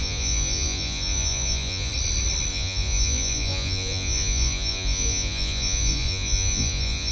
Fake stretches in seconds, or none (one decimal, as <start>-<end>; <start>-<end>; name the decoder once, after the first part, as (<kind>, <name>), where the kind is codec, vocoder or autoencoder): 0.0-1.9 (vocoder, Vocos); 2.5-7.1